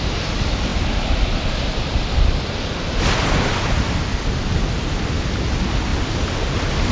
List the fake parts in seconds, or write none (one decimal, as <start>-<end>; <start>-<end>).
none